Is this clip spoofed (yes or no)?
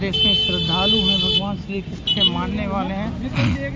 no